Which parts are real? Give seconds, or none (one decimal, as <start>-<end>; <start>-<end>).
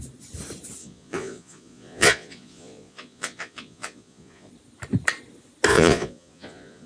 0.0-0.8; 4.5-5.7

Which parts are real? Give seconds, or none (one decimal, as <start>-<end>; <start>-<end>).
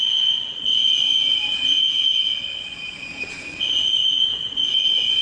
none